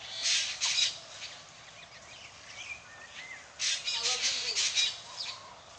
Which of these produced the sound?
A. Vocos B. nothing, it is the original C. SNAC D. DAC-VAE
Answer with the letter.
B